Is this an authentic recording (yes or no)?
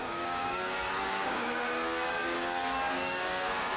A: no